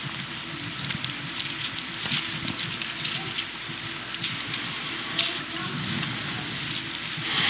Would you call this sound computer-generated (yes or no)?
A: no